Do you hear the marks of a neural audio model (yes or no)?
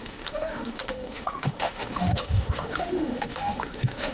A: yes